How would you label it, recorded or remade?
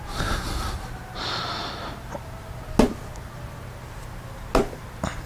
recorded